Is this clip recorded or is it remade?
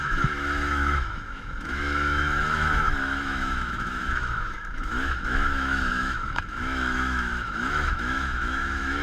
remade